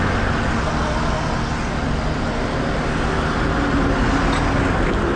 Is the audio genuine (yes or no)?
yes